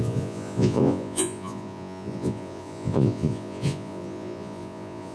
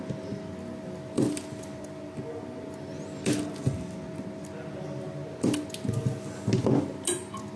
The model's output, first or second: first